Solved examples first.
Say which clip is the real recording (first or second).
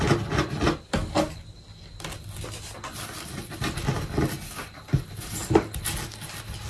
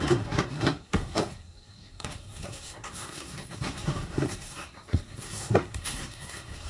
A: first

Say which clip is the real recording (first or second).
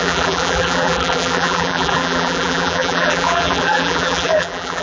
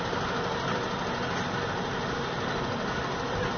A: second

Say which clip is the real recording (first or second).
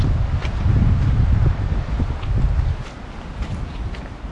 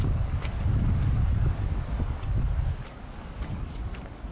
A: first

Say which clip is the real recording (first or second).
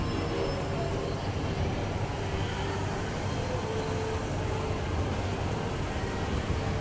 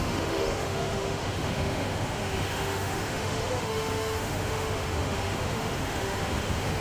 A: first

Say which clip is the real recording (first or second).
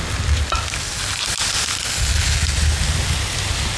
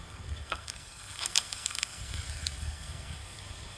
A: first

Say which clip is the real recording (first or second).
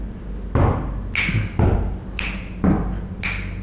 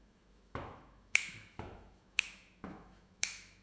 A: first